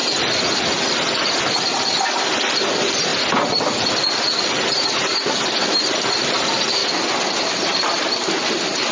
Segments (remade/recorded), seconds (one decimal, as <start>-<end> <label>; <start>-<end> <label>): 0.0-3.1 remade; 3.1-4.4 recorded; 4.4-6.8 remade; 6.8-7.4 recorded; 7.4-8.9 remade